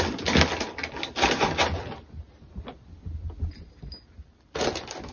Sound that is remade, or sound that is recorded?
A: recorded